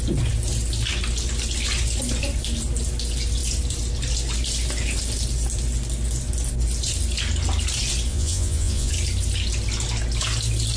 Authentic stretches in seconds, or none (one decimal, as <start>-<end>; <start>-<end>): 0.0-8.1; 8.9-10.8